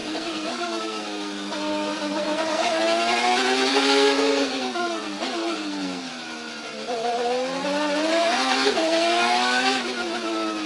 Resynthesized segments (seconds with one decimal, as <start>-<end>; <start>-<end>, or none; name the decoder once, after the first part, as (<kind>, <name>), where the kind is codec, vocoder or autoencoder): 0.0-2.8 (codec, SNAC); 3.7-6.1; 8.1-9.8